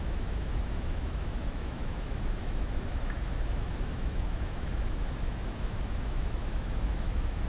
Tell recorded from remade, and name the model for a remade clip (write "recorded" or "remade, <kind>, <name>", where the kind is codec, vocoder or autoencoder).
remade, autoencoder, DAC-VAE